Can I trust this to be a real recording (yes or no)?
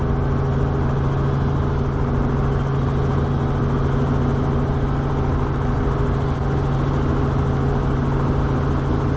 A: yes